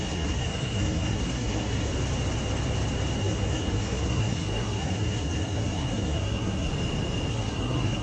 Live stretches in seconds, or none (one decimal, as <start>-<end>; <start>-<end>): 1.9-3.2; 6.7-7.3